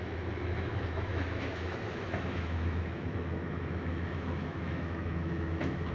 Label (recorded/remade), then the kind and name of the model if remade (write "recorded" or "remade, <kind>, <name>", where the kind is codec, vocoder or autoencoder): remade, autoencoder, DAC-VAE